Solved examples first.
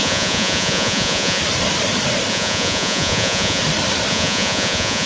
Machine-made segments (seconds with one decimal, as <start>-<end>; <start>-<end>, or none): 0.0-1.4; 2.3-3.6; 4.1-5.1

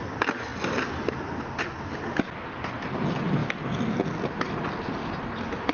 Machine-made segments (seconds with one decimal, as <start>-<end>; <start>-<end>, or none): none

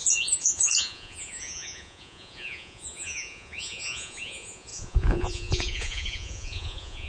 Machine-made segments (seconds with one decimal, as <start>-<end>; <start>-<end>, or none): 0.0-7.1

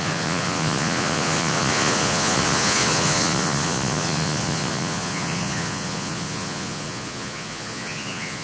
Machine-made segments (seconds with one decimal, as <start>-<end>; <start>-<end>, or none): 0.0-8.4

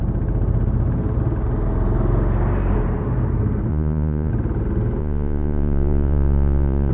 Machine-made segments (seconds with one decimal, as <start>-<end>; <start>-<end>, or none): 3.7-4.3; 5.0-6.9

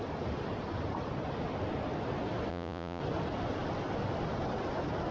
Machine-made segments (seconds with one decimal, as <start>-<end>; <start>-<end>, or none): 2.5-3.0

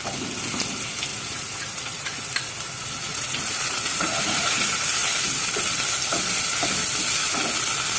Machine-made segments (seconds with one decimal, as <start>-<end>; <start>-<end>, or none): 1.1-2.2; 3.1-4.5